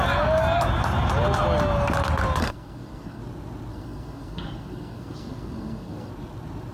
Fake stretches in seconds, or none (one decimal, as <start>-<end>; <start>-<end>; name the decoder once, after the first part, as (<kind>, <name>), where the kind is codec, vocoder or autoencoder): 2.4-3.2 (codec, SNAC); 3.7-6.1